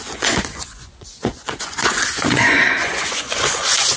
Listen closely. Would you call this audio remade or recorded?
remade